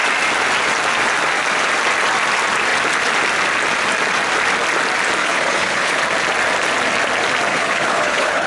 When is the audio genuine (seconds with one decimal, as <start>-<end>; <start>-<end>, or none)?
0.0-5.2; 6.0-7.5